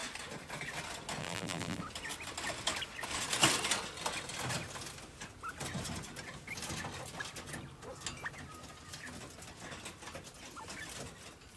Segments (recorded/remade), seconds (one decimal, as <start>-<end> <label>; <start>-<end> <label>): 0.0-1.2 recorded; 1.2-1.8 remade; 1.8-11.6 recorded